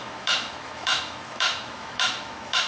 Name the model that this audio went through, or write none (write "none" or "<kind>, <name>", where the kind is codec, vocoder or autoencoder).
autoencoder, DAC-VAE